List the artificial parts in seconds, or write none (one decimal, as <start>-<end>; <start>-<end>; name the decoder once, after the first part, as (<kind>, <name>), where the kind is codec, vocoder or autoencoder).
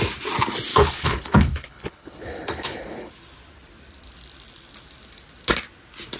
0.7-3.1 (codec, HILCodec)